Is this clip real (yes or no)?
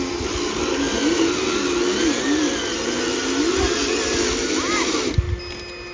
yes